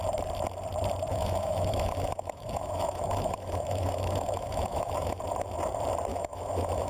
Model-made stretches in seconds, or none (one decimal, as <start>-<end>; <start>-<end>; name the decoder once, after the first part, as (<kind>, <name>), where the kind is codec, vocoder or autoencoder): 1.1-5.2 (autoencoder, DAC-VAE); 6.1-6.9